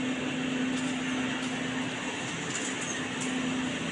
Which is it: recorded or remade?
recorded